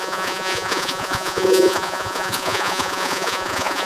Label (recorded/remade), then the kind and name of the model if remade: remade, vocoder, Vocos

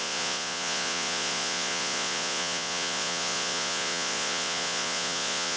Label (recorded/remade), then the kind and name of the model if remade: remade, vocoder, Vocos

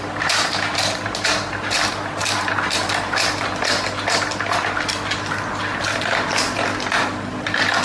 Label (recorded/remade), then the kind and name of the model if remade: recorded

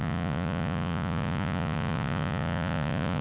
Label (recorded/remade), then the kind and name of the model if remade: remade, vocoder, Vocos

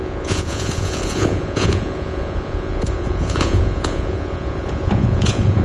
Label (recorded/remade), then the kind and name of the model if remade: remade, vocoder, Vocos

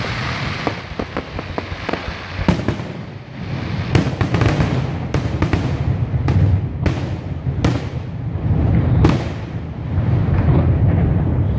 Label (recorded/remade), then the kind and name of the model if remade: recorded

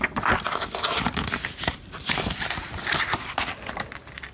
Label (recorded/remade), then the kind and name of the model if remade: recorded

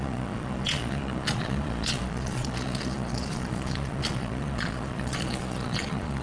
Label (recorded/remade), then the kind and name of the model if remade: remade, vocoder, Vocos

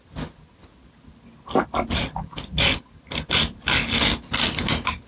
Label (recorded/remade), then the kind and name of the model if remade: recorded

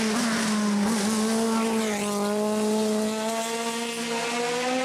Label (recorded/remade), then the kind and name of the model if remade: recorded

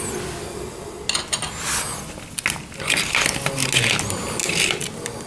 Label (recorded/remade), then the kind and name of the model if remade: recorded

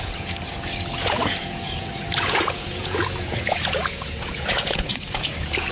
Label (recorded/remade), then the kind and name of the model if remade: remade, vocoder, Vocos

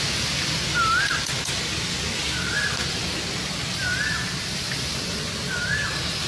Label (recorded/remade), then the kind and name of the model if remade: recorded